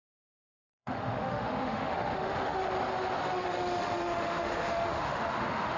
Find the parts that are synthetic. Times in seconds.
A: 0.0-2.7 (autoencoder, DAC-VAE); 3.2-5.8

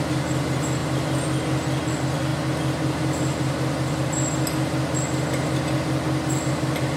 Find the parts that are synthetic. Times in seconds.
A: none

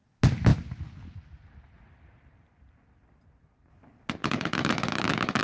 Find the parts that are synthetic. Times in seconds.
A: 4.2-5.4 (autoencoder, DAC-VAE)

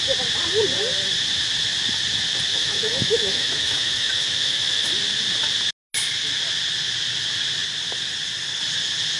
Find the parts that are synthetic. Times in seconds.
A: 2.5-4.9 (autoencoder, DAC-VAE)